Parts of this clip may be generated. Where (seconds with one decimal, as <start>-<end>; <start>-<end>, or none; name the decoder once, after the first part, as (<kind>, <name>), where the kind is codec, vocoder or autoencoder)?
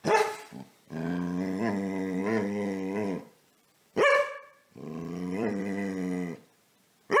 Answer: 0.0-1.1 (vocoder, BigVGAN v2); 2.2-5.6